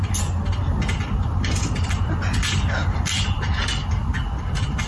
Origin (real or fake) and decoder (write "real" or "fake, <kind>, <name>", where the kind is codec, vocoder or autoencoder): fake, vocoder, BigVGAN v2